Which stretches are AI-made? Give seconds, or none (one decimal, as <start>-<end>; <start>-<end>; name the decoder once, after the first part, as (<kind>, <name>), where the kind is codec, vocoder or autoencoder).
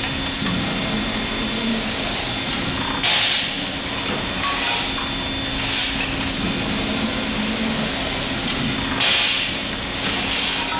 1.7-2.3 (codec, DAC)